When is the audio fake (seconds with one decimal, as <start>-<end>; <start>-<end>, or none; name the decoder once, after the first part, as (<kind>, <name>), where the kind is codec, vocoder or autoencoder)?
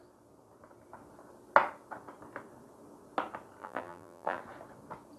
3.6-4.4 (vocoder, BigVGAN v2)